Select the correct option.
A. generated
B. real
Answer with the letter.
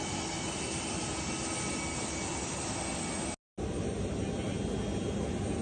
B